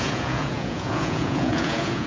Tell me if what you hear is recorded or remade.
remade